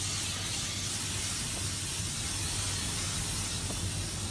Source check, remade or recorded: recorded